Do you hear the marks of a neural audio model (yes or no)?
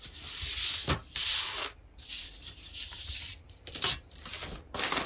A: no